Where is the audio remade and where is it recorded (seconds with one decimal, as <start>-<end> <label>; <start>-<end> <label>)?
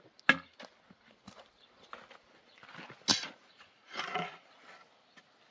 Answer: 0.0-3.1 recorded; 3.1-4.5 remade; 4.5-5.5 recorded